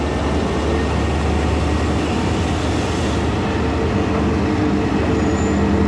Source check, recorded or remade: recorded